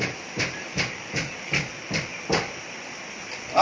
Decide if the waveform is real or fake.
real